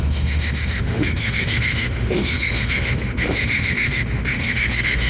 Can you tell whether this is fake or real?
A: fake